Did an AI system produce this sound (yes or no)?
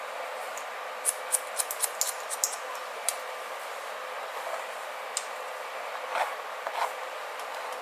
no